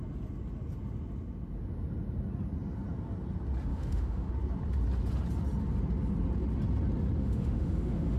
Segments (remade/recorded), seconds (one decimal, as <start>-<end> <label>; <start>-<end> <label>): 0.0-3.7 recorded; 3.7-4.3 remade; 4.3-7.2 recorded; 7.2-8.2 remade